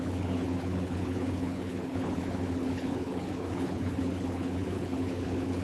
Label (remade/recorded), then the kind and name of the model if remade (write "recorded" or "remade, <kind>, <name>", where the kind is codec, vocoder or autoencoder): remade, codec, HILCodec